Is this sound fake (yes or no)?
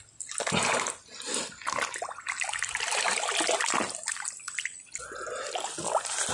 no